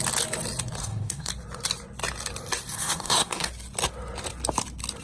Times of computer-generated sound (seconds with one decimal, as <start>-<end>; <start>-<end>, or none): 0.8-1.3; 2.7-3.5